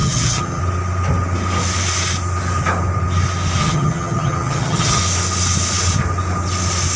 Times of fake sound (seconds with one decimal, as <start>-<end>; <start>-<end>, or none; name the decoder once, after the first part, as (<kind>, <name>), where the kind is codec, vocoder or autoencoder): 0.0-0.6 (vocoder, HiFi-GAN); 3.6-5.0